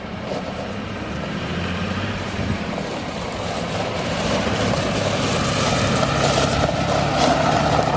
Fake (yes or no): yes